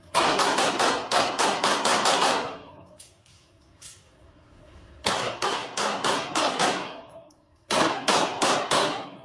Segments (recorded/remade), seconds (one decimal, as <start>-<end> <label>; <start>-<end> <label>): 0.0-9.2 remade